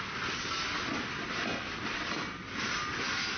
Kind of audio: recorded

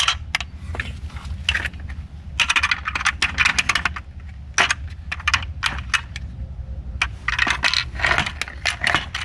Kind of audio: recorded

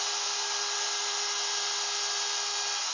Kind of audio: recorded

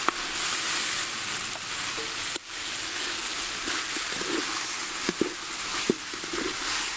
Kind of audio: recorded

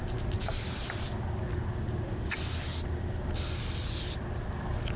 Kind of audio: recorded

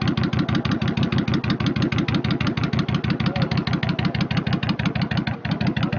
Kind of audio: recorded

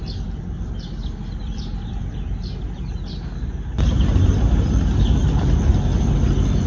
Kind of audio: recorded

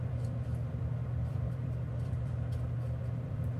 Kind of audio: remade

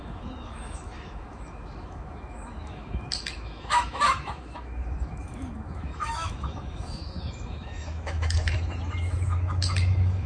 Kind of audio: remade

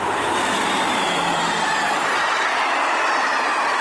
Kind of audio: recorded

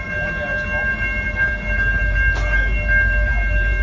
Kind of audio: recorded